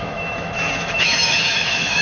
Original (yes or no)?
no